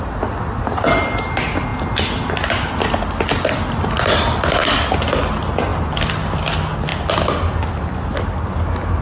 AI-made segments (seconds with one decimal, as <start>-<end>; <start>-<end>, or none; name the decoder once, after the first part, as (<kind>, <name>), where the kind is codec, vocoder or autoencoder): 5.7-6.4 (vocoder, BigVGAN v2)